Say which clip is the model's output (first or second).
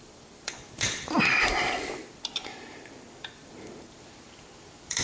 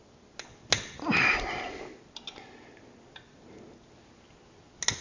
first